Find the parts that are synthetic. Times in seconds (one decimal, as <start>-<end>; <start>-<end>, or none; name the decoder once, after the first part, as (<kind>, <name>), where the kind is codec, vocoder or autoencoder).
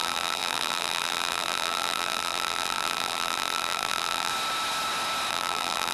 0.0-4.3 (vocoder, BigVGAN v2); 5.3-5.9